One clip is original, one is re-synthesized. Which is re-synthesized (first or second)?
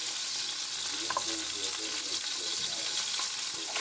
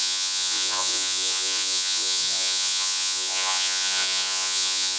second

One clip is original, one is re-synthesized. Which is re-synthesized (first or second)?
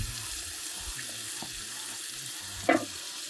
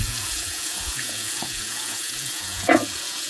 second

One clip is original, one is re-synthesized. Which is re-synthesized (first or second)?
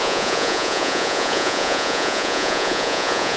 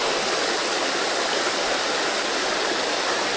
first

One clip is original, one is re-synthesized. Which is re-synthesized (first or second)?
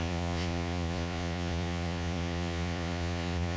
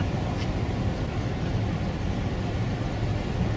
first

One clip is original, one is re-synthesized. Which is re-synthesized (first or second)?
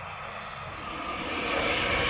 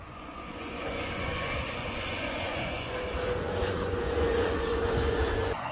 second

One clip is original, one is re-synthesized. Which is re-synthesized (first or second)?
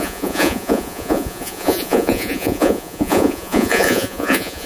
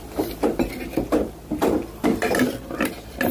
first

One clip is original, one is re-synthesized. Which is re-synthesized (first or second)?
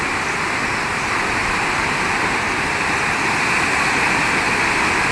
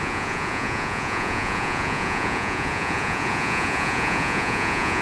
second